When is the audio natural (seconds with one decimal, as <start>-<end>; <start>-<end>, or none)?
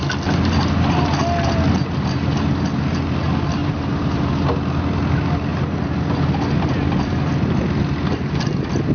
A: 0.0-3.6; 4.2-8.9